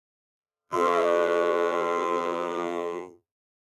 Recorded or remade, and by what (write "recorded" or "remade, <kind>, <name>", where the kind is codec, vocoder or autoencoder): remade, vocoder, BigVGAN v2